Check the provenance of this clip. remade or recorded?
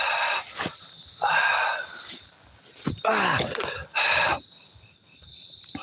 recorded